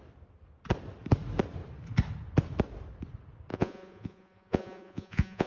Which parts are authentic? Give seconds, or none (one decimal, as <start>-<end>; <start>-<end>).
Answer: 0.0-3.5